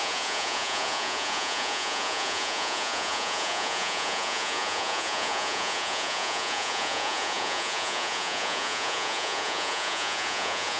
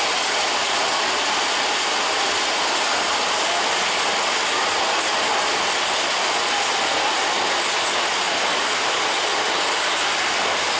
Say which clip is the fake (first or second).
first